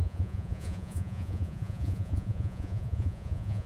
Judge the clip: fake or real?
fake